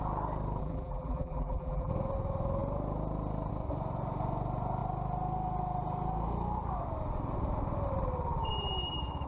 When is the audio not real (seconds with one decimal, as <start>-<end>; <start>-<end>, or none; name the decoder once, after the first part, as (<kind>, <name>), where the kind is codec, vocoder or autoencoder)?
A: 0.6-1.9 (vocoder, BigVGAN v2)